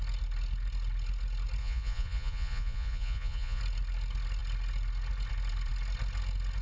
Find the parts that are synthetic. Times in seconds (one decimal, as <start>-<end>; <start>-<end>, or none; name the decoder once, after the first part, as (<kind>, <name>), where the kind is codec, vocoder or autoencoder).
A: 1.6-3.6 (vocoder, Vocos)